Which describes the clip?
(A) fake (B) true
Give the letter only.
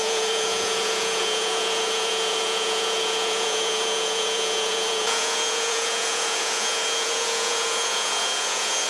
A